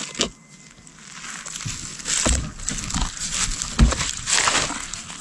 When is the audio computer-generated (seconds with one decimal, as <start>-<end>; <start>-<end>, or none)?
none